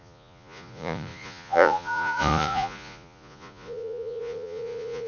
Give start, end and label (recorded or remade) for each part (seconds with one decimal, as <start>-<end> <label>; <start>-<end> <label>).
0.0-5.1 remade

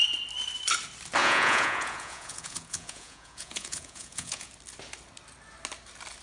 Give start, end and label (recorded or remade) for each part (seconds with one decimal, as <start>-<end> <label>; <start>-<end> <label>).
0.0-1.2 recorded; 1.2-4.5 remade; 4.5-6.2 recorded

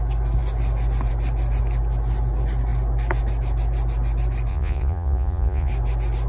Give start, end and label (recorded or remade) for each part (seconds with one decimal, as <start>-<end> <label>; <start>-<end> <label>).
0.0-4.5 recorded; 4.5-5.7 remade; 5.7-6.3 recorded

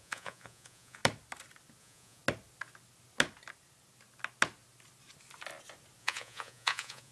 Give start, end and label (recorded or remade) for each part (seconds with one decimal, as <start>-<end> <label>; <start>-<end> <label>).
0.0-1.0 remade; 1.0-1.8 recorded; 1.8-2.2 remade; 2.2-6.0 recorded; 6.0-7.1 remade

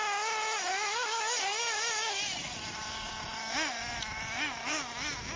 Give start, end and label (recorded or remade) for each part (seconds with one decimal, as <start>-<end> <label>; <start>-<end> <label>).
0.0-5.4 recorded

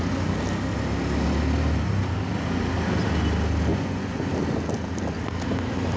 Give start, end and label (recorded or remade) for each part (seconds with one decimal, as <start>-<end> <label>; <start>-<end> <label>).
0.0-3.7 recorded; 3.7-4.3 remade; 4.3-6.0 recorded